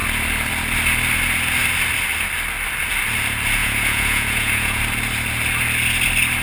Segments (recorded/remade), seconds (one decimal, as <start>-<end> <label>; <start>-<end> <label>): 0.0-3.6 recorded; 3.6-4.8 remade; 4.8-6.4 recorded